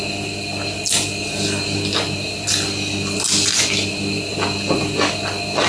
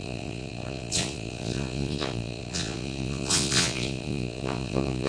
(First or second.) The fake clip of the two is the second